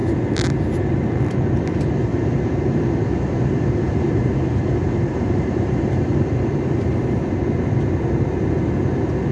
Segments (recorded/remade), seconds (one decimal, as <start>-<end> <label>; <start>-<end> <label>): 0.0-2.1 recorded; 2.1-7.3 remade; 7.3-9.3 recorded